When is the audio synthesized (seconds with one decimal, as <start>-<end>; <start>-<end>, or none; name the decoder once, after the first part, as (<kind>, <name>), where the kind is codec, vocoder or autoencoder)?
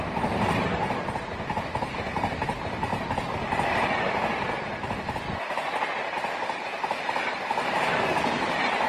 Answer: none